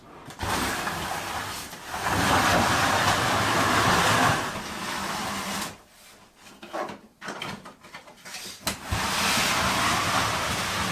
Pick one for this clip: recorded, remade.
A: recorded